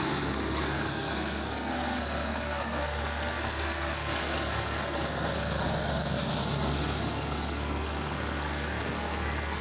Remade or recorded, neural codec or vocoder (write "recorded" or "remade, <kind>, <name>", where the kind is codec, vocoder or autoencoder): remade, codec, SNAC